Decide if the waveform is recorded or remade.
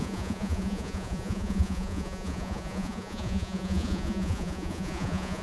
remade